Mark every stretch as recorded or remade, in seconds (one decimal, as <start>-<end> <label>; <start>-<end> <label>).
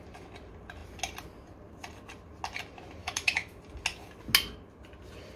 0.0-3.0 recorded; 3.0-3.6 remade; 3.6-5.4 recorded